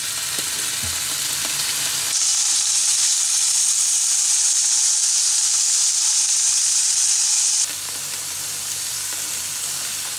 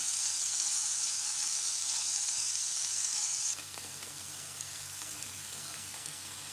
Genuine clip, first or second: first